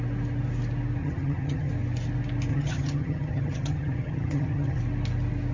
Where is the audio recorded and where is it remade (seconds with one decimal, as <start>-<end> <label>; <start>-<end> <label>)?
0.0-1.0 recorded; 1.0-1.7 remade; 1.7-2.5 recorded; 2.5-4.8 remade; 4.8-5.5 recorded